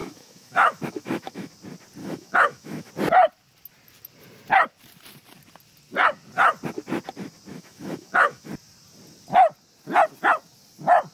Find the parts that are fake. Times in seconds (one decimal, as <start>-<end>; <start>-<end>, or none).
0.0-1.5; 2.0-2.9; 7.5-8.5